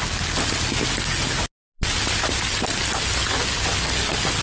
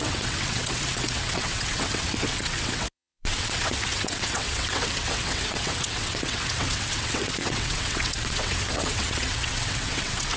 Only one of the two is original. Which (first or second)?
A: first